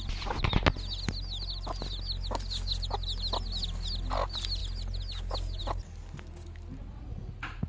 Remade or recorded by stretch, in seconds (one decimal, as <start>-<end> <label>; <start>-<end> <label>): 0.0-6.9 recorded; 6.9-7.7 remade